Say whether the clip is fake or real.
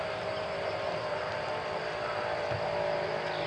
real